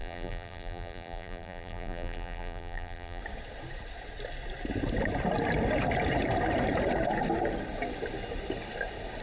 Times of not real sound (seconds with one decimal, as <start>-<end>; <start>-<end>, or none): 0.0-3.2